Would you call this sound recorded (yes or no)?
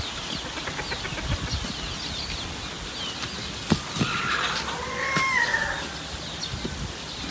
yes